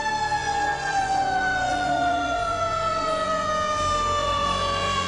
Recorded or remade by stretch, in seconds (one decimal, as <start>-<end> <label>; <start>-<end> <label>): 0.0-0.4 recorded; 0.4-3.5 remade; 3.5-4.2 recorded; 4.2-5.1 remade